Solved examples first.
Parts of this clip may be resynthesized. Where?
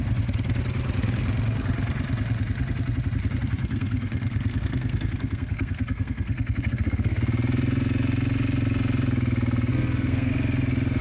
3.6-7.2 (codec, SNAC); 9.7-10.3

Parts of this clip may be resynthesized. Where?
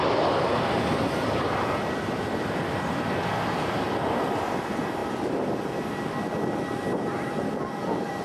none